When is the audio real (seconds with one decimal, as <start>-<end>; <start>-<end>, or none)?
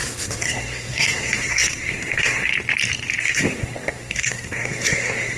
2.5-3.2